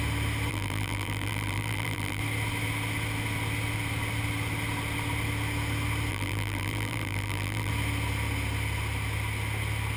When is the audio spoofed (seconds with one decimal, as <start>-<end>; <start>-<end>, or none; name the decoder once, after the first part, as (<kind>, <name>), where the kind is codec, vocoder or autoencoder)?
0.5-2.2 (vocoder, BigVGAN v2); 6.1-7.7

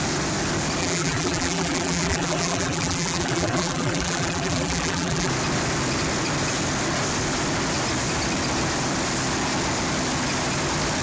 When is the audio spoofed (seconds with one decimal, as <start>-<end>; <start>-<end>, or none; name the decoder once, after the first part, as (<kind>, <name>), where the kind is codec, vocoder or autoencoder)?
0.8-5.3 (vocoder, BigVGAN v2)

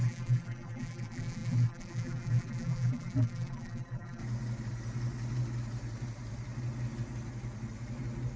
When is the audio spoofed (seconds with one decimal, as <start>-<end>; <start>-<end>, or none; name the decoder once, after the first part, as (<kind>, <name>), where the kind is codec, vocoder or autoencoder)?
0.0-4.2 (vocoder, BigVGAN v2)

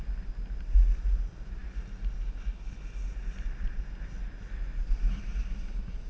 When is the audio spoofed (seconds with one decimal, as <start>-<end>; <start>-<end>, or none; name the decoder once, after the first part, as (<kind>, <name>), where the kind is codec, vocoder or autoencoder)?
none

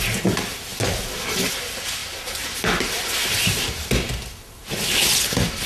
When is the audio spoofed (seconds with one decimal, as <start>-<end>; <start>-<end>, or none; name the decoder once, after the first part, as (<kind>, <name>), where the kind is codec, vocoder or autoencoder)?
0.0-0.7 (vocoder, BigVGAN v2); 1.5-2.0; 5.1-5.7

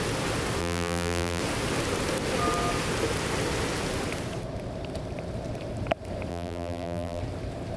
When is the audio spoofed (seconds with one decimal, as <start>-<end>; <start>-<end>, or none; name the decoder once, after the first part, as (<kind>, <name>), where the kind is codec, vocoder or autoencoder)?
0.6-1.4 (vocoder, BigVGAN v2); 6.3-7.2

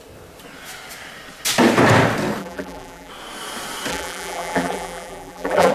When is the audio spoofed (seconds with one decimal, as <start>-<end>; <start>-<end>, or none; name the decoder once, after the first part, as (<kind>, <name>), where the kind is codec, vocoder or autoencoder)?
2.4-3.1 (vocoder, BigVGAN v2); 3.9-5.7

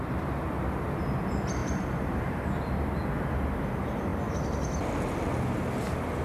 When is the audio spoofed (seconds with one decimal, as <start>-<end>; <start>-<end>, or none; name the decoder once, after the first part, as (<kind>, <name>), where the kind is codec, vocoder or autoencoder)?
1.6-2.5 (vocoder, BigVGAN v2)